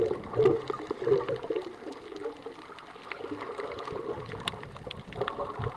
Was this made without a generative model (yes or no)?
yes